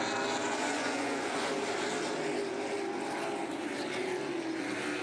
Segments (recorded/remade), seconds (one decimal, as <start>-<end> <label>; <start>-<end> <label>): 0.0-0.4 recorded; 0.4-1.5 remade; 1.5-5.0 recorded